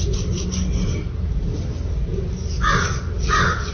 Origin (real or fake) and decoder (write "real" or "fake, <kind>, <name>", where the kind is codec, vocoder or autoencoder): real